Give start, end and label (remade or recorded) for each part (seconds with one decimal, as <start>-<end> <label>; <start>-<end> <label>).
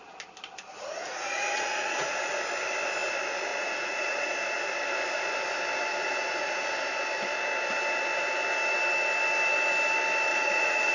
0.0-0.7 recorded; 0.7-2.3 remade; 2.3-3.5 recorded; 3.5-4.3 remade; 4.3-5.9 recorded; 5.9-6.6 remade; 6.6-10.3 recorded; 10.3-10.9 remade